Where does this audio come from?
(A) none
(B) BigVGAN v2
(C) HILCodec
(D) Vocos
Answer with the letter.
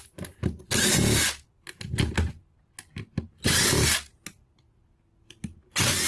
A